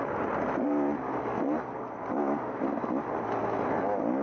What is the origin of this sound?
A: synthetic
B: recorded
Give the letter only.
B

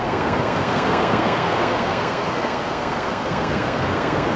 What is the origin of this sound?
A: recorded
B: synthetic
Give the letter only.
B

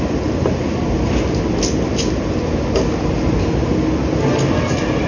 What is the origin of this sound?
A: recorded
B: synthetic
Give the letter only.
A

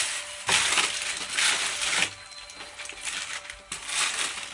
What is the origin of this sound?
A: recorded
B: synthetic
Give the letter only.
A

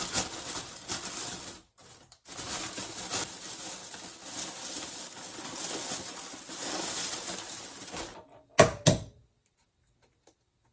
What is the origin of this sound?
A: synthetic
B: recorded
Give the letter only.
B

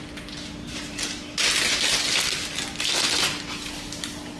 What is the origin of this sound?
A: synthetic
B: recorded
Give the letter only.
B